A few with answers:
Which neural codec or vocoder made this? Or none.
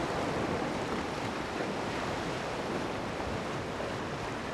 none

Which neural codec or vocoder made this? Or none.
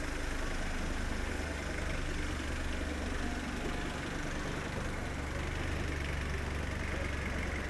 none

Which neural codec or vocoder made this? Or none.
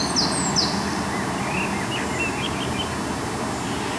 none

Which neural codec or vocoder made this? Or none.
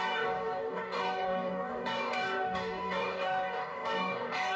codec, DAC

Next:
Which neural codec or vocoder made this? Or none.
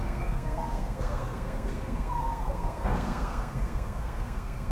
codec, SNAC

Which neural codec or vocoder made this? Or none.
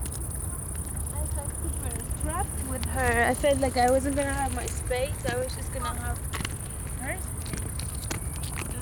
none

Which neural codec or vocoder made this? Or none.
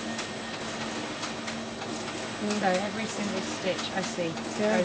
none